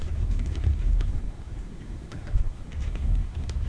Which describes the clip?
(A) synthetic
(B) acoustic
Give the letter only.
A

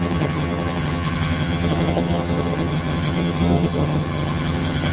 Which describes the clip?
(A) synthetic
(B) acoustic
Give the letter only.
A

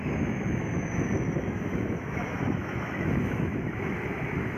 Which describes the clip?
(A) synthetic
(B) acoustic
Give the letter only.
A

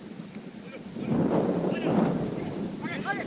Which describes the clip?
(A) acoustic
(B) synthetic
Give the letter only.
A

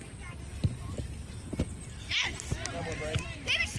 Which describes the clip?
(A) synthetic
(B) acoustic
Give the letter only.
B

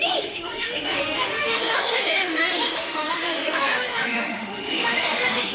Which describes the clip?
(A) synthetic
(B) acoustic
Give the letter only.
A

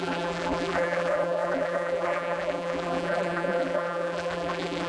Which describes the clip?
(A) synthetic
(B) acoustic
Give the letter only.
A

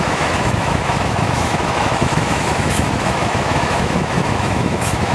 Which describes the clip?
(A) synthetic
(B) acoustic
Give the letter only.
A